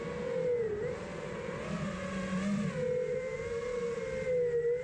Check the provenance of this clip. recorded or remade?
recorded